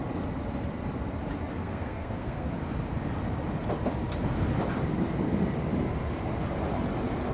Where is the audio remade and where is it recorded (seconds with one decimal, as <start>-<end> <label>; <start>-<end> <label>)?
0.0-1.6 recorded; 1.6-2.5 remade; 2.5-7.3 recorded